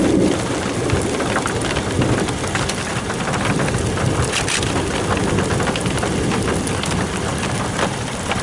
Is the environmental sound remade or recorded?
recorded